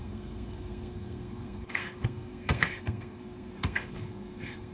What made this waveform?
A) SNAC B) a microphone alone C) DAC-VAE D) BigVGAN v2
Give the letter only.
A